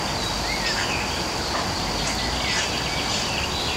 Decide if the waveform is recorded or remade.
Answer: recorded